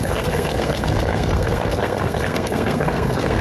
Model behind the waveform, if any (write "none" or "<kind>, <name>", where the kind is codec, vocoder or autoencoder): codec, SNAC